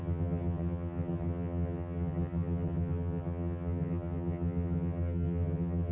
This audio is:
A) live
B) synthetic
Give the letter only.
B